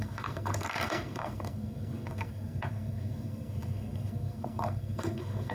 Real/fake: fake